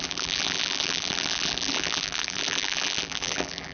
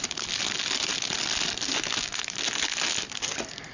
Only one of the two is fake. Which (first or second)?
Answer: first